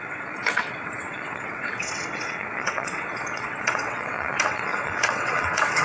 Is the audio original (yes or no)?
no